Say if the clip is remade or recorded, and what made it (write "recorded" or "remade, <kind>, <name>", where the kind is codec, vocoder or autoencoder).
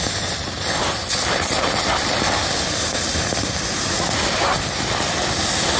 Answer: recorded